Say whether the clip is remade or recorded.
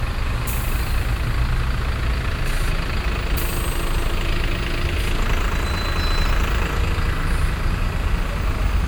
recorded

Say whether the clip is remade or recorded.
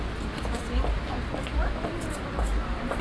recorded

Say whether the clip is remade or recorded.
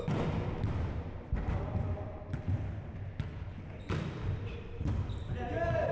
recorded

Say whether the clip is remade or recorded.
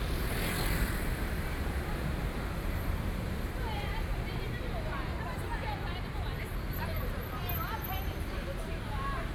remade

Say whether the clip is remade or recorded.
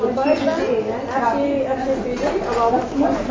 recorded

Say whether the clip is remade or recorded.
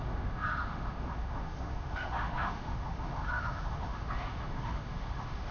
remade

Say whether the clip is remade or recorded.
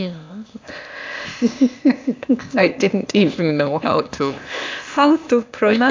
remade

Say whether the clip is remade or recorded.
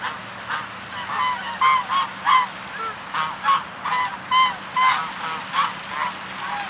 recorded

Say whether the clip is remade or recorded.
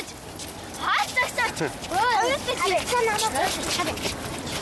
recorded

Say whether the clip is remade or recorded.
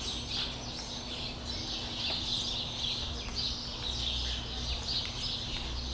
recorded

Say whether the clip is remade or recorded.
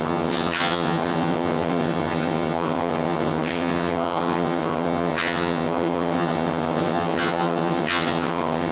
remade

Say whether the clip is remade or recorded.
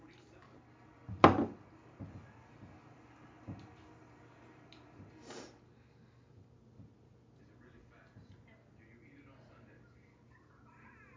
recorded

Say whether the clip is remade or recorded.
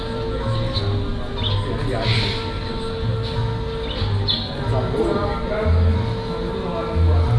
recorded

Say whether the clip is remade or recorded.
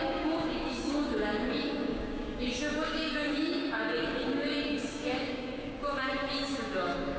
remade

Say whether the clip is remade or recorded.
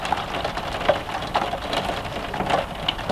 recorded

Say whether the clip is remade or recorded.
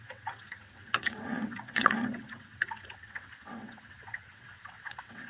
remade